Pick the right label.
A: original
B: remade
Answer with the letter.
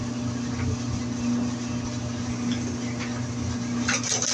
A